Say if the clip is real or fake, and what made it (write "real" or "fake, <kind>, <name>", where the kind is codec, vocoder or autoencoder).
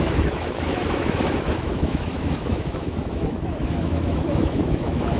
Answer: fake, autoencoder, DAC-VAE